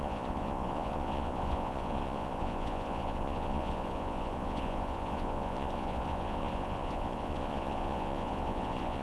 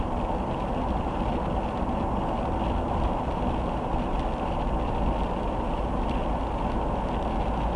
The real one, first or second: second